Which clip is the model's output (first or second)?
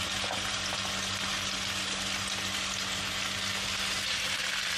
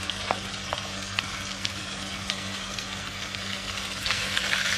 second